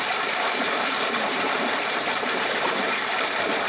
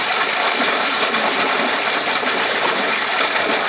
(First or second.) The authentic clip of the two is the second